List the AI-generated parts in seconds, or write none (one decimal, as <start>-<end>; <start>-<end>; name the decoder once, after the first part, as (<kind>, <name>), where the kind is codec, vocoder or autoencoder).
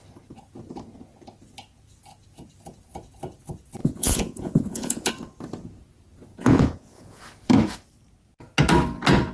3.8-5.1 (vocoder, Vocos); 6.3-7.2